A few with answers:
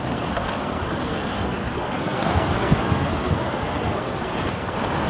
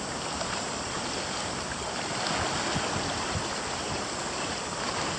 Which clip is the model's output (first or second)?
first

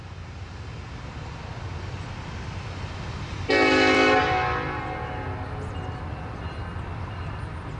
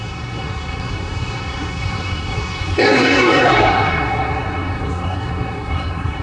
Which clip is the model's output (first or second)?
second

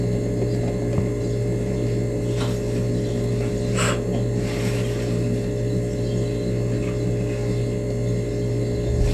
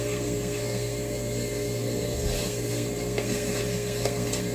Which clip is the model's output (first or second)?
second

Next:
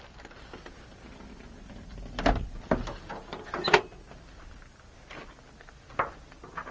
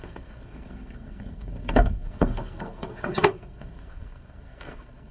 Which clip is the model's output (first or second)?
second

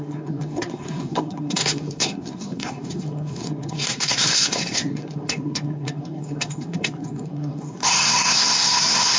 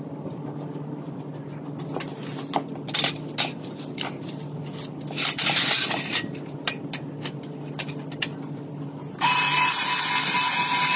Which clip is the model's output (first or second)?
first